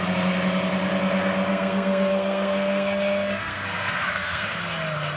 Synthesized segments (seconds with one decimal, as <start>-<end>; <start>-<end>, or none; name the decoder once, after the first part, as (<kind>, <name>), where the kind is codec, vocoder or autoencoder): 1.5-4.6 (codec, SNAC)